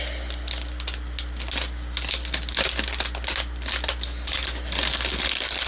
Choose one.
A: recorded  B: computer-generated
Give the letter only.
A